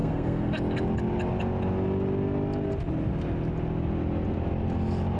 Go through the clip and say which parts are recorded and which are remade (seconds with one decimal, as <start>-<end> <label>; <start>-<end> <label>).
0.0-0.5 remade; 0.5-5.2 recorded